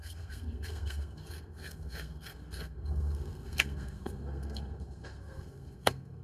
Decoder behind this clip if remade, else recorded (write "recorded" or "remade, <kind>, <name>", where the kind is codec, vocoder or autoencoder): remade, codec, SNAC